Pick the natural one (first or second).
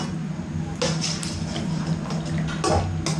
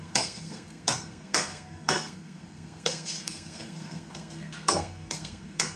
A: first